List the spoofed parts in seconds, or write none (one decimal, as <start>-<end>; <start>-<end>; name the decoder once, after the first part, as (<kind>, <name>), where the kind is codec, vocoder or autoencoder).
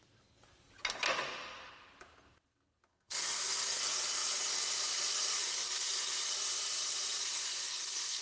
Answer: 2.9-3.8 (codec, SNAC); 5.4-6.3; 7.2-8.2